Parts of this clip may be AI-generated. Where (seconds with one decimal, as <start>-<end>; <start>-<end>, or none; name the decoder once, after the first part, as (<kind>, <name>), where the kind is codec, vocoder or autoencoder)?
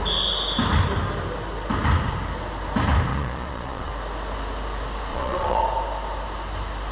3.1-3.9 (vocoder, Vocos); 5.1-5.6